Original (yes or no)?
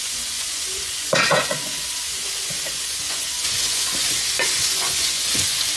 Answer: no